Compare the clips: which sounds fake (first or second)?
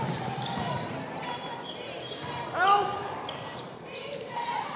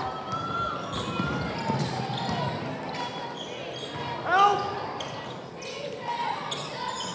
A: first